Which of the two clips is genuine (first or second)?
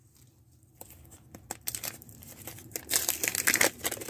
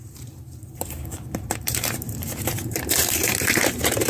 first